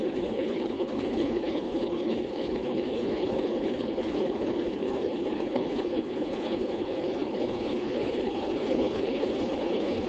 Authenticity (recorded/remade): remade